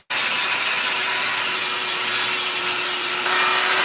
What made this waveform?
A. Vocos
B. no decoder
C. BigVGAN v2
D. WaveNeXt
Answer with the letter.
B